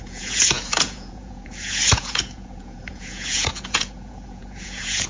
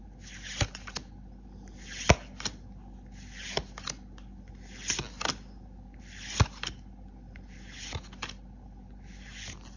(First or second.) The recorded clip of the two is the second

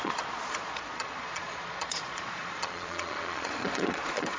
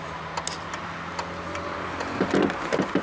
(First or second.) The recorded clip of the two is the second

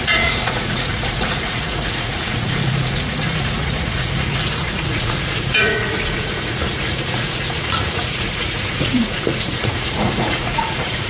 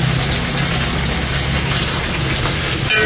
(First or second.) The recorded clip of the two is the second